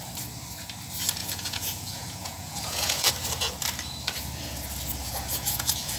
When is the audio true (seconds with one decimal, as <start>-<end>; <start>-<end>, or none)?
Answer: 0.0-1.2; 3.1-5.0